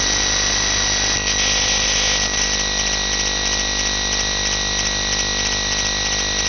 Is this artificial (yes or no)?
no